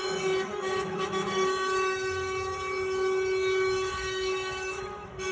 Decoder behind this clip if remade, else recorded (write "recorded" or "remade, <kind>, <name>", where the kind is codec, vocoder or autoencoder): remade, autoencoder, DAC-VAE